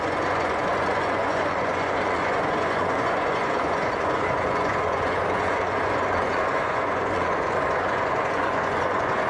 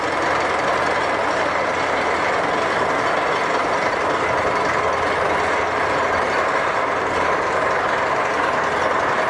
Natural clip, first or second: second